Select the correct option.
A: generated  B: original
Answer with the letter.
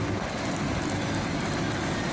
B